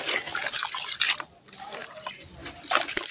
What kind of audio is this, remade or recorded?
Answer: recorded